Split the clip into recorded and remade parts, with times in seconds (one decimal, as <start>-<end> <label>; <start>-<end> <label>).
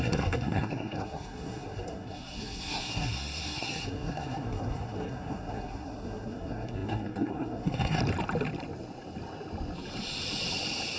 0.0-8.0 remade; 8.0-11.0 recorded